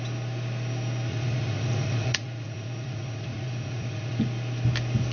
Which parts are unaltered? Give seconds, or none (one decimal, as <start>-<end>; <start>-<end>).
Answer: 0.0-1.1; 4.2-5.1